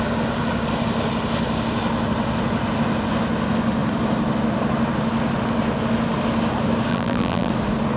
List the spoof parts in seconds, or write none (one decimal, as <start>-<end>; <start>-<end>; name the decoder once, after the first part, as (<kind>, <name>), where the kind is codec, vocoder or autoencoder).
6.9-7.5 (vocoder, BigVGAN v2)